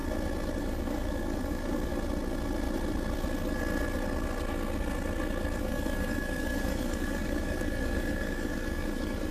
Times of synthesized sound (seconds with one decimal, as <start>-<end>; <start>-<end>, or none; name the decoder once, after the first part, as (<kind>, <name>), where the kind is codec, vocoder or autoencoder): 0.6-1.9 (codec, DAC); 5.6-9.3